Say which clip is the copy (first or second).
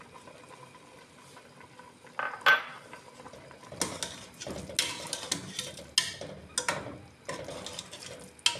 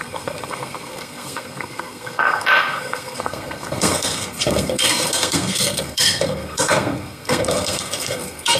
second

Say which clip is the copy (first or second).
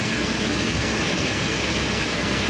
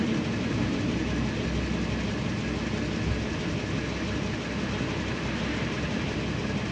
first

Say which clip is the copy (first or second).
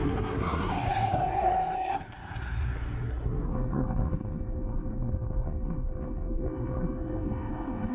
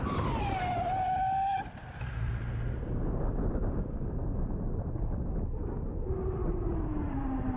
first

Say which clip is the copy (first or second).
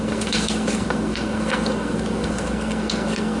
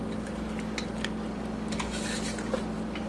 first